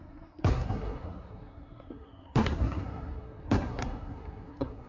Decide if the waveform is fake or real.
fake